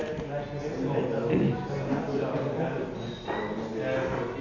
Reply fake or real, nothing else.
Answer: real